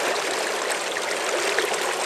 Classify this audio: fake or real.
real